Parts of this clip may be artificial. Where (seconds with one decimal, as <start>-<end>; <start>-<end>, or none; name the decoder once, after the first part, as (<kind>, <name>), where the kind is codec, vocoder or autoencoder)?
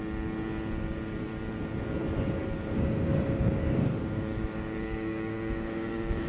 2.4-6.3 (codec, DAC)